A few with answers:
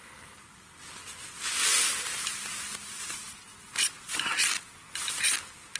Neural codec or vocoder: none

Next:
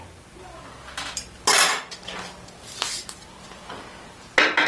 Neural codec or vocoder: none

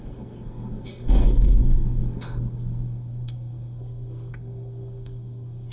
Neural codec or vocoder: codec, SNAC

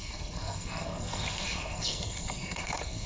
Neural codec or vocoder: codec, SNAC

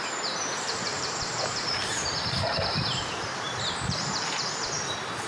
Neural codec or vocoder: vocoder, BigVGAN v2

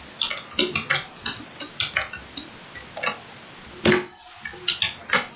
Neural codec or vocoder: none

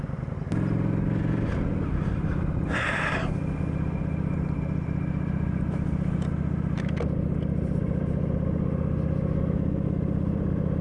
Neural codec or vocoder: none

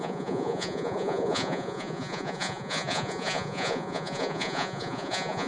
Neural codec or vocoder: vocoder, Vocos